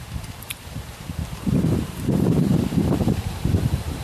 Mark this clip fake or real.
fake